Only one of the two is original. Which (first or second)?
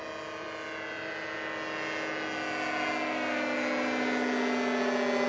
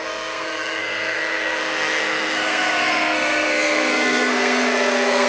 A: first